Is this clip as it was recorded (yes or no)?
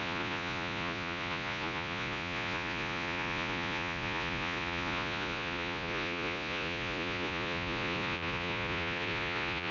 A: no